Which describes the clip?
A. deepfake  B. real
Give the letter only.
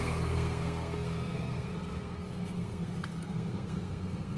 A